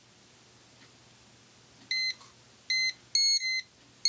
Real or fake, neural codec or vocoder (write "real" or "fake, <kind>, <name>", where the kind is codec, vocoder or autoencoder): real